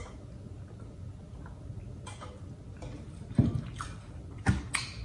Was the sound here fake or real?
real